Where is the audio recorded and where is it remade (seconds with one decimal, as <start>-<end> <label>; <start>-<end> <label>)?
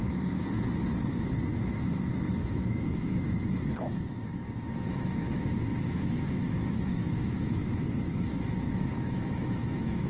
0.0-1.1 recorded; 1.1-10.1 remade